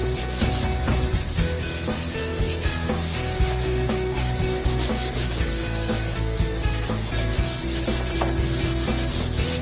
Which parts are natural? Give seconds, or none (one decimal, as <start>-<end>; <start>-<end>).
0.0-2.2; 7.1-9.6